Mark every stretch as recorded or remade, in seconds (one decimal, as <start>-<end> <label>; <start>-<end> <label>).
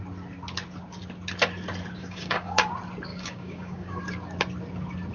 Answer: 0.0-2.0 recorded; 2.0-2.7 remade; 2.7-3.1 recorded; 3.1-4.0 remade; 4.0-5.1 recorded